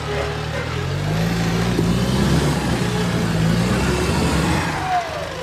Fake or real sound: real